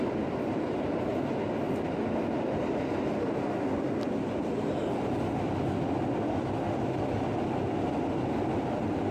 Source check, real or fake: real